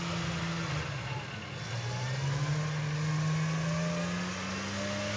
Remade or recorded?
recorded